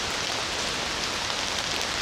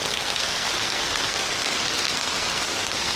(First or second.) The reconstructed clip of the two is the second